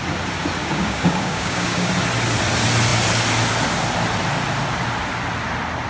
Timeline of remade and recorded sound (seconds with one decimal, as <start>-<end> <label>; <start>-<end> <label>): 0.0-0.6 recorded; 0.6-1.9 remade; 1.9-5.9 recorded